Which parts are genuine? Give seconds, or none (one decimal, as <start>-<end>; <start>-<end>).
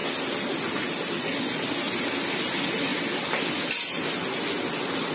0.0-5.1